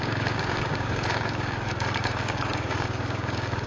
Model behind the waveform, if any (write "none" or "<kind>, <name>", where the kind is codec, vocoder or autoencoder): codec, DAC